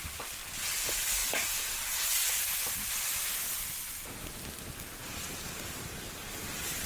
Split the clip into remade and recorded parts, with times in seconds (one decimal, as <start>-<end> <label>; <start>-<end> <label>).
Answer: 0.0-6.9 recorded